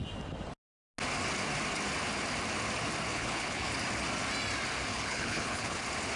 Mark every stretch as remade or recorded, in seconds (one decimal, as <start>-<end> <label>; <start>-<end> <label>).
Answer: 0.0-3.1 recorded; 3.1-3.7 remade; 3.7-4.9 recorded; 4.9-5.8 remade; 5.8-6.2 recorded